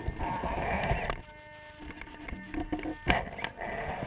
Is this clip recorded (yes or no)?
yes